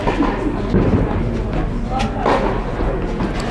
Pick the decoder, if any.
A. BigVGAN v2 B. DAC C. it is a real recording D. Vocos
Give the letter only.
C